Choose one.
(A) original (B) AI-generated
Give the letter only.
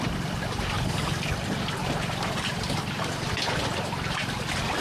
A